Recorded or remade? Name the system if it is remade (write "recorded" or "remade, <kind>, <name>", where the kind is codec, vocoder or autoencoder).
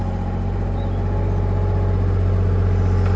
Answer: recorded